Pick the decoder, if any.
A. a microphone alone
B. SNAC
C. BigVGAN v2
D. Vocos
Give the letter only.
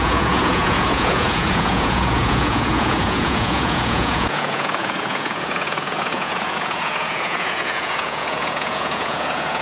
D